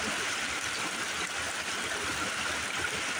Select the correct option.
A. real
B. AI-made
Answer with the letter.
A